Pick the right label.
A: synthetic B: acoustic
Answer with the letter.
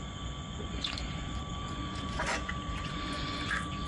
A